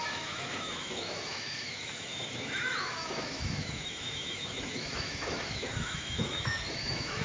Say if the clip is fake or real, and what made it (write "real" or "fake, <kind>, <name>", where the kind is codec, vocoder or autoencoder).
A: fake, autoencoder, DAC-VAE